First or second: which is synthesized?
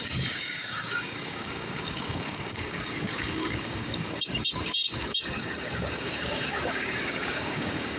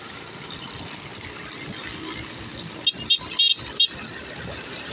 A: first